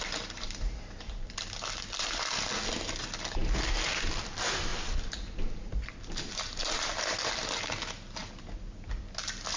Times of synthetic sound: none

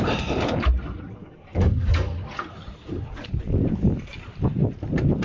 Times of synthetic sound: 1.2-2.1 (codec, DAC)

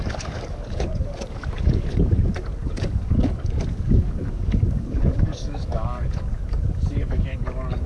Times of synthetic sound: 0.0-7.9 (codec, DAC)

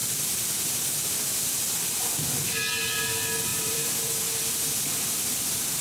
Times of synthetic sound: 3.5-4.4 (vocoder, BigVGAN v2)

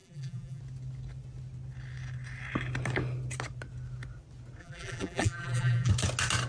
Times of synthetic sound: 0.0-0.6 (vocoder, BigVGAN v2); 4.6-5.9